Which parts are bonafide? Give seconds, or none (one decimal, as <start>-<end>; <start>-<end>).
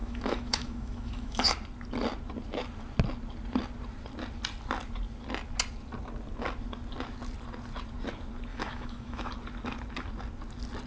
1.4-8.5; 9.3-10.9